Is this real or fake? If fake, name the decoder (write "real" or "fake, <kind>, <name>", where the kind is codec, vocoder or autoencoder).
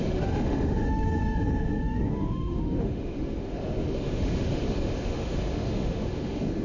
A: fake, autoencoder, DAC-VAE